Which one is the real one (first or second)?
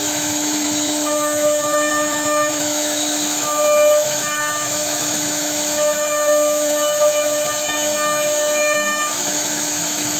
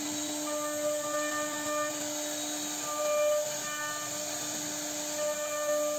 second